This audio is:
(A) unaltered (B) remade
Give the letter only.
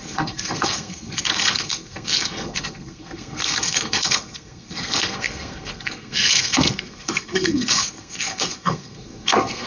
B